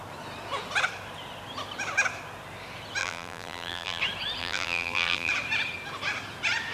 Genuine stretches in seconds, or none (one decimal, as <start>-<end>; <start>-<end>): 0.0-3.0; 4.0-4.4; 5.3-6.7